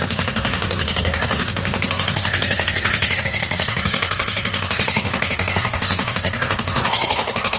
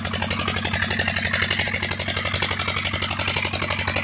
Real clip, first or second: second